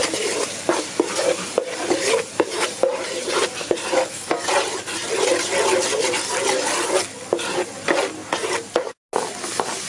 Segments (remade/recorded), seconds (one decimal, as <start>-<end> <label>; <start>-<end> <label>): 0.0-4.0 remade; 4.0-9.9 recorded